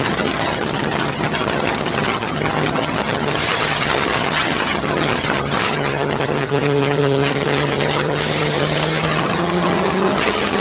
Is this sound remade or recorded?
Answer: remade